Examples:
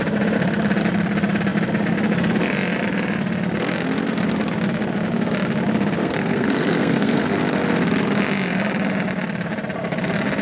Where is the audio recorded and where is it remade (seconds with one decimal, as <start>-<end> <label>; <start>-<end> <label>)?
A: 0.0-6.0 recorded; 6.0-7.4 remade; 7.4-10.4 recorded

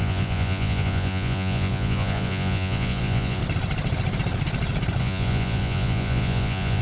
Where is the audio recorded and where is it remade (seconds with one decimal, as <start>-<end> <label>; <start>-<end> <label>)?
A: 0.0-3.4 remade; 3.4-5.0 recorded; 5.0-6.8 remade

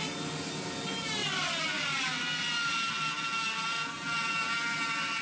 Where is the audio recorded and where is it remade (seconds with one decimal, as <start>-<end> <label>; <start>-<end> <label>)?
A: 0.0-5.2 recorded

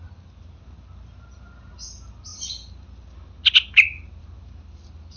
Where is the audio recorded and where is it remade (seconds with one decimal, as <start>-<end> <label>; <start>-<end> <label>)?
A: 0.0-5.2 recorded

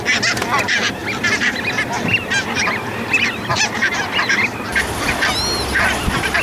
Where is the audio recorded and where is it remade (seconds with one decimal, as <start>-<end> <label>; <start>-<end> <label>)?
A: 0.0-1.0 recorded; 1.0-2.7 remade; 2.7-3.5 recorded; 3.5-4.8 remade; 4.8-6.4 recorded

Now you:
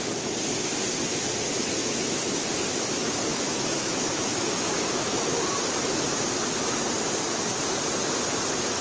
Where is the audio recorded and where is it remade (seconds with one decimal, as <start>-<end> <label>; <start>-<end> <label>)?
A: 0.0-1.8 recorded; 1.8-2.4 remade; 2.4-3.3 recorded; 3.3-5.4 remade; 5.4-8.8 recorded